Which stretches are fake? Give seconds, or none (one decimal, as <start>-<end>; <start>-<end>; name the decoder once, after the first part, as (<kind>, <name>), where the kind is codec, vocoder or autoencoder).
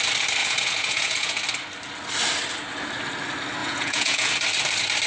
0.4-1.4 (vocoder, Vocos); 3.6-4.3